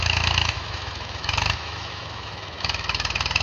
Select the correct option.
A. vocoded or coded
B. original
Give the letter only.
A